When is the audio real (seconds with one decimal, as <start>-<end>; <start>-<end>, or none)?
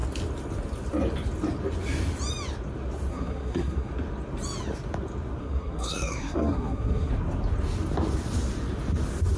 0.0-3.1; 3.9-5.4; 7.1-9.4